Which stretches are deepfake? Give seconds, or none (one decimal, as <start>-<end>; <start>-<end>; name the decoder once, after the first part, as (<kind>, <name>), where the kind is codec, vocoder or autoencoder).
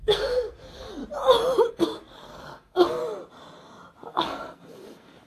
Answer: 0.0-1.0 (codec, SNAC); 1.7-3.0; 4.1-5.3